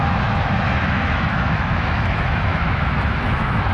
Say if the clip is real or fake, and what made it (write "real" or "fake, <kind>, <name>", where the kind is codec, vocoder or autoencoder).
fake, autoencoder, DAC-VAE